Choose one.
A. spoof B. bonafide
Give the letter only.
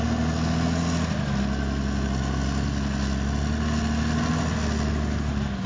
B